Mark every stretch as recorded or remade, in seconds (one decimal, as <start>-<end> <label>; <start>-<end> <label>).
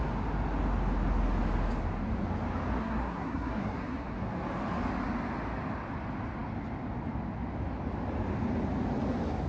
0.0-2.8 recorded; 2.8-4.3 remade; 4.3-9.5 recorded